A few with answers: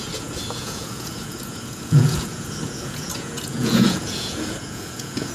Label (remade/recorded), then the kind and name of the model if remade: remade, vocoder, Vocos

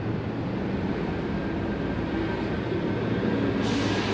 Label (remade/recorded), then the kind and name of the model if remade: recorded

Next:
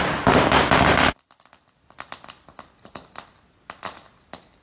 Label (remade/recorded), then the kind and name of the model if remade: recorded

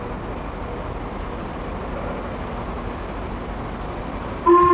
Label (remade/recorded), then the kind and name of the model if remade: recorded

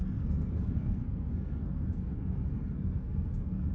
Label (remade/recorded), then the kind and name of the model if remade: remade, codec, SNAC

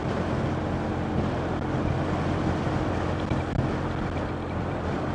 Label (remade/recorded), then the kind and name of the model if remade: recorded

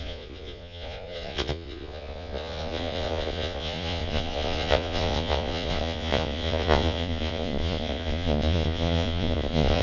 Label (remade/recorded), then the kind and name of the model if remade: remade, vocoder, Vocos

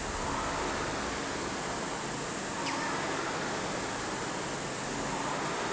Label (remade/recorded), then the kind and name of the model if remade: recorded